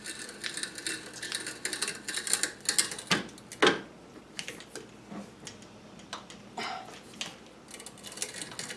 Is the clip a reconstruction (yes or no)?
no